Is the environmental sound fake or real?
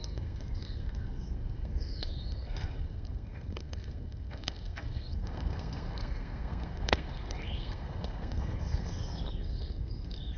fake